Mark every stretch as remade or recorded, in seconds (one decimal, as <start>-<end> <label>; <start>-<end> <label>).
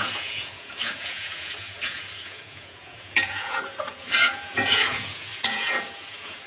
0.0-6.5 remade